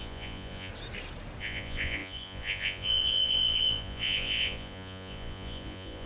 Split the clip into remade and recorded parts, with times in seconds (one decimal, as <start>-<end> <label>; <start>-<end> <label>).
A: 0.0-0.7 remade; 0.7-1.4 recorded; 1.4-6.1 remade